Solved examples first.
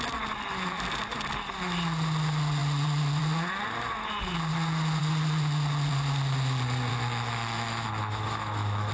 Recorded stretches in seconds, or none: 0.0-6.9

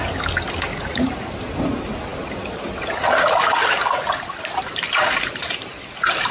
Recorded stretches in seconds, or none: 0.0-0.7; 1.3-6.3

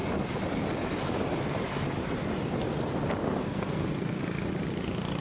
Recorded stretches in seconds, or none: 0.0-3.2; 4.2-5.2

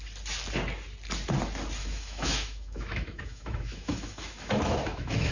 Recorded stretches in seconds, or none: 0.0-1.8

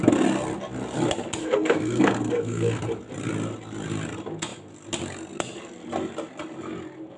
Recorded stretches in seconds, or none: 0.0-1.4; 2.8-7.2

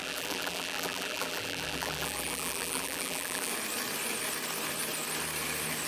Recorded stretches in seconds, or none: 3.5-5.9